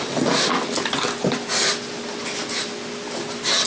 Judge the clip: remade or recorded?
recorded